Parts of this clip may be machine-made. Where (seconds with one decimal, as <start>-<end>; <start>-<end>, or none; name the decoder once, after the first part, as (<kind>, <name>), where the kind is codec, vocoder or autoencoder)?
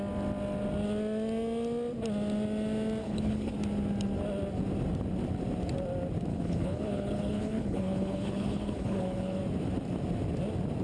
3.0-3.5 (codec, HILCodec); 6.3-9.4